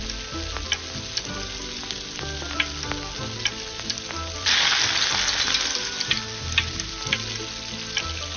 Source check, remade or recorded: recorded